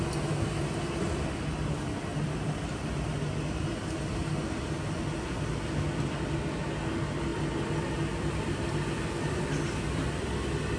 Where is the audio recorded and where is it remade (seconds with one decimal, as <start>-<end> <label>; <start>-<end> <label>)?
0.0-7.3 recorded; 7.3-9.0 remade; 9.0-10.8 recorded